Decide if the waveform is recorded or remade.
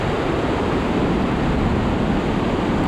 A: recorded